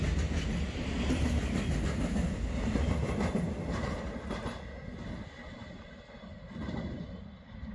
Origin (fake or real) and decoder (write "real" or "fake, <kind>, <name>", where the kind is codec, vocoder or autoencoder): real